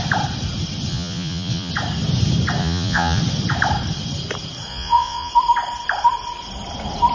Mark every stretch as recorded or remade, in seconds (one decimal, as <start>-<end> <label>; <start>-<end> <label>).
0.0-0.9 recorded; 0.9-1.7 remade; 1.7-2.6 recorded; 2.6-3.2 remade; 3.2-4.7 recorded; 4.7-5.3 remade; 5.3-7.1 recorded